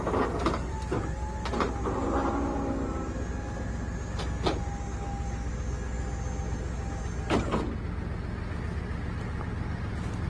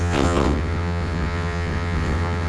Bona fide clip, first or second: first